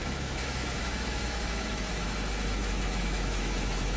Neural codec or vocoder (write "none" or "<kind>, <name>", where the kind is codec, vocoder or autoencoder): autoencoder, DAC-VAE